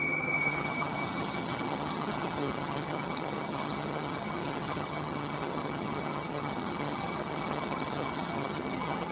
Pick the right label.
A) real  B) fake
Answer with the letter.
B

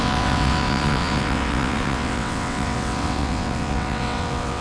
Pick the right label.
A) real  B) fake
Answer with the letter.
B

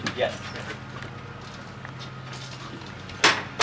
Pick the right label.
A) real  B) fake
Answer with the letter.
A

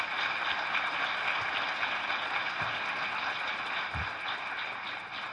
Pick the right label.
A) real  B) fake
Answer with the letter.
A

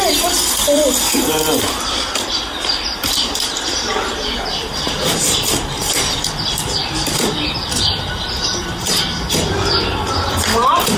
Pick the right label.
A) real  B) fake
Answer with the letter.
B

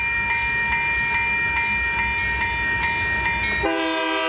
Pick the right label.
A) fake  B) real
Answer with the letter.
B